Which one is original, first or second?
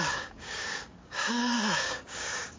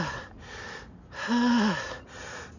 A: second